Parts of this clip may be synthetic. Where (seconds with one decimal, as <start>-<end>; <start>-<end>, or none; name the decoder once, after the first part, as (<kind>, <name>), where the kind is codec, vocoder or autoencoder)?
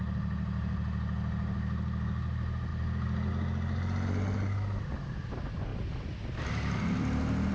none